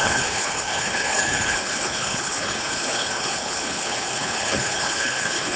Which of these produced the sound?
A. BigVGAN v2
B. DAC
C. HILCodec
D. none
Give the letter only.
C